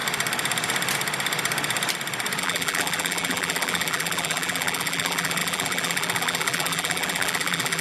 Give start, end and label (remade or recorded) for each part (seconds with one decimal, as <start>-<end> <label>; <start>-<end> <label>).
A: 0.0-2.4 recorded; 2.4-7.8 remade